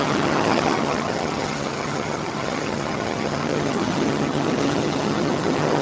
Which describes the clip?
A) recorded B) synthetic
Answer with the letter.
B